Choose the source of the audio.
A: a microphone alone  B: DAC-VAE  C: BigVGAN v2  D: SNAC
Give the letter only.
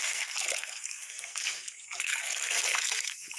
D